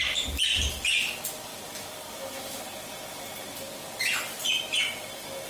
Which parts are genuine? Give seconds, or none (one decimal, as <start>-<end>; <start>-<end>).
0.0-5.5